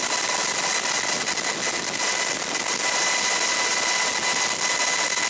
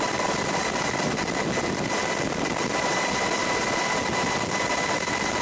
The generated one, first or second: second